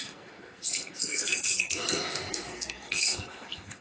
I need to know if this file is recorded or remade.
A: remade